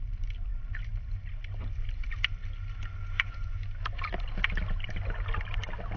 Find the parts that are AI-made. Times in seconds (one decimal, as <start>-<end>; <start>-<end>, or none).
3.0-3.6